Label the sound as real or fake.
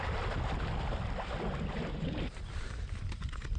fake